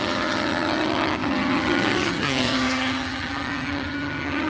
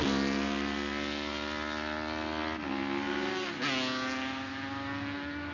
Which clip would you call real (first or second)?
second